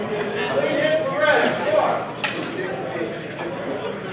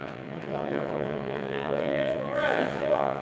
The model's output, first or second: second